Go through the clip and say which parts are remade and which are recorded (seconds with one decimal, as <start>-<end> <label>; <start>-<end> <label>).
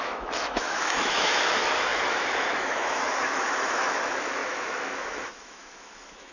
0.0-6.3 remade